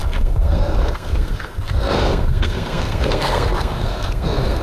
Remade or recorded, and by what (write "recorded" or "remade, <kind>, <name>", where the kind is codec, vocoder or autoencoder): remade, codec, SNAC